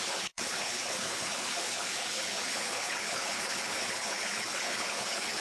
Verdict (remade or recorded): remade